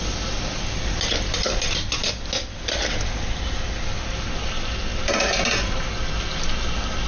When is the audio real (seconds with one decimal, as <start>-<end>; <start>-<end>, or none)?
0.0-4.9; 5.8-7.1